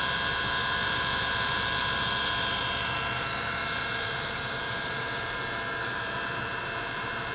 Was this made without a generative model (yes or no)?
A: no